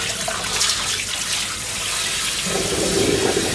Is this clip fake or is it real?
real